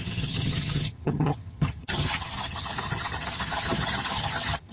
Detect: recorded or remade remade